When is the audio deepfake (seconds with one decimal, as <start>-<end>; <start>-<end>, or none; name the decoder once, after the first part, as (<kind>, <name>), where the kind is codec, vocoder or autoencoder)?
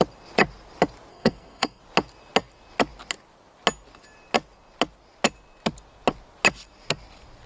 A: 1.1-1.8 (codec, SNAC)